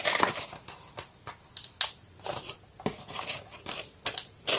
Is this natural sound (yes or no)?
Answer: yes